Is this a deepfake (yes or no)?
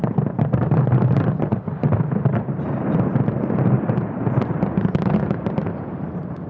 yes